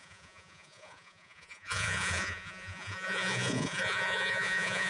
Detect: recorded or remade remade